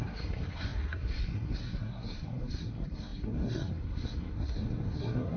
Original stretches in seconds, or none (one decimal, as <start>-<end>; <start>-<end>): none